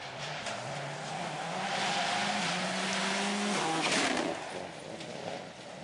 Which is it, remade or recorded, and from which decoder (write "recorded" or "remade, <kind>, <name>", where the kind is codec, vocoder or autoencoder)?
recorded